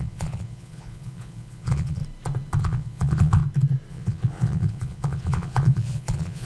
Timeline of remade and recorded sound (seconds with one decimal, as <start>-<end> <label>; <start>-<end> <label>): 0.0-2.0 remade; 2.0-2.6 recorded; 2.6-3.4 remade; 3.4-3.9 recorded; 3.9-6.5 remade